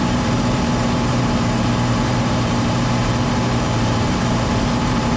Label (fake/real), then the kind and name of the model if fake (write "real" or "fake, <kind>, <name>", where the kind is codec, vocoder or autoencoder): fake, vocoder, BigVGAN v2